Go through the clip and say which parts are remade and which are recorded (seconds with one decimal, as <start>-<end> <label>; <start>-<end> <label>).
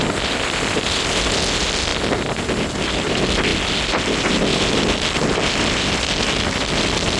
0.0-7.2 recorded